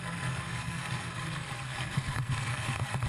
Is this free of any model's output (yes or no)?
no